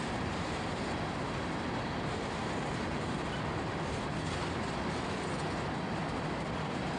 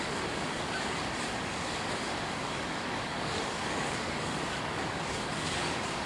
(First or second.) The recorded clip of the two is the first